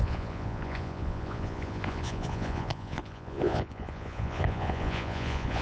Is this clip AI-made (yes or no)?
yes